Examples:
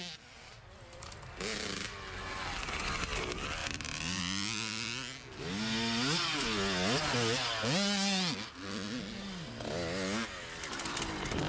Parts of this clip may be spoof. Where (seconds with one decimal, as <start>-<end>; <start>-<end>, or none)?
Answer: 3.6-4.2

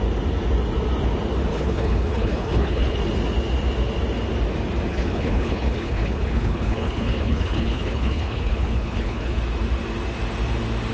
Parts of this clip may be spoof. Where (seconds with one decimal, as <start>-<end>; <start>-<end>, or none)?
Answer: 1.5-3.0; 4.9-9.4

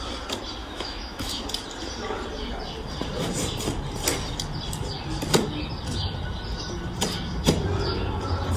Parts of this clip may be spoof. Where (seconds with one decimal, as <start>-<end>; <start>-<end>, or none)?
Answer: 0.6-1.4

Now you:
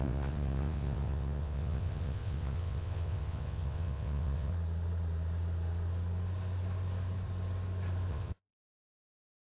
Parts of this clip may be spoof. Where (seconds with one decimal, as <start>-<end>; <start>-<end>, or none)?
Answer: 0.0-4.5; 8.1-9.5